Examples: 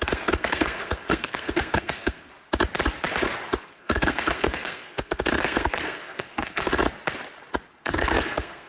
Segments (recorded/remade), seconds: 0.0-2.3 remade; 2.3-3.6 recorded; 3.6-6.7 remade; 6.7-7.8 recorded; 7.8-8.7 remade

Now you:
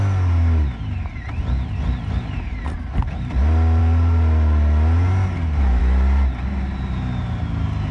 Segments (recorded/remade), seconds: 0.0-7.9 recorded

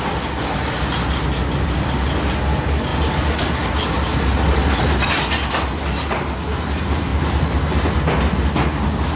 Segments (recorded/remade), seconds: 0.0-9.2 recorded

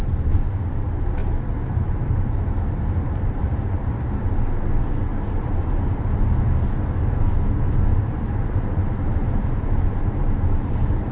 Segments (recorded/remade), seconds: 0.0-1.2 recorded; 1.2-4.3 remade; 4.3-5.1 recorded; 5.1-6.0 remade; 6.0-7.9 recorded; 7.9-10.4 remade; 10.4-11.1 recorded

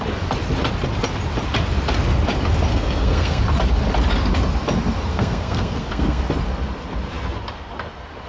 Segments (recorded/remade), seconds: 0.0-2.7 recorded; 2.7-3.4 remade; 3.4-5.1 recorded; 5.1-6.2 remade; 6.2-8.3 recorded

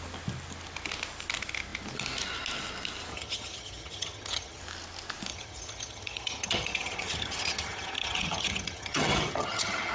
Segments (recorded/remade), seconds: 0.0-3.1 recorded; 3.1-4.6 remade; 4.6-5.3 recorded; 5.3-9.9 remade

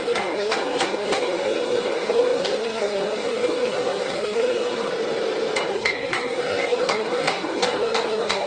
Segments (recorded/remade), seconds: 0.0-4.9 remade; 4.9-5.7 recorded; 5.7-8.5 remade